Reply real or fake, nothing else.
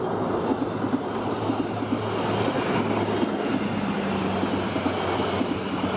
real